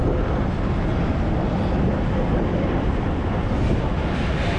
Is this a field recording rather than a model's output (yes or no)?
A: yes